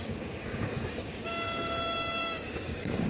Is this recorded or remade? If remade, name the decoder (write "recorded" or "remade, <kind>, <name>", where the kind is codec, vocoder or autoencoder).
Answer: remade, codec, DAC